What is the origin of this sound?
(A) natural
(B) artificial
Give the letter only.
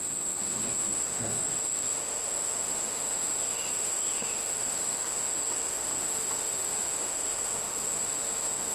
B